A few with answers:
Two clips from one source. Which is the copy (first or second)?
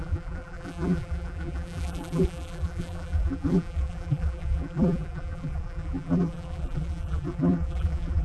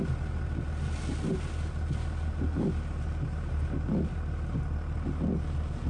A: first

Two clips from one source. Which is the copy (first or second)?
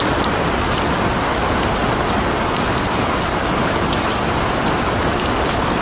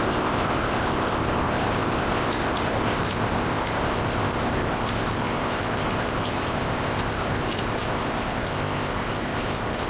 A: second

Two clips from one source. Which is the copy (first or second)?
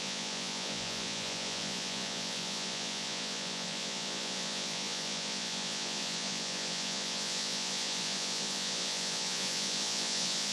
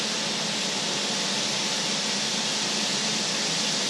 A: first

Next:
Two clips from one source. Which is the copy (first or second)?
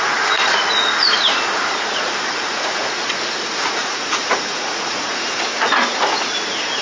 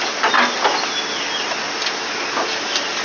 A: first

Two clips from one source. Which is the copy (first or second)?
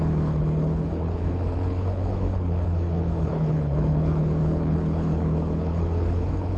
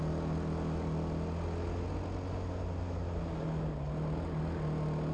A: first